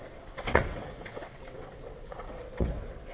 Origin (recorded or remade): remade